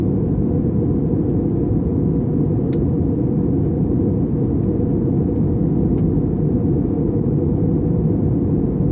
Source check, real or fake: real